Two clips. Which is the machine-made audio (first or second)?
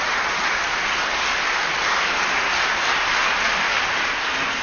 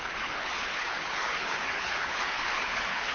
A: second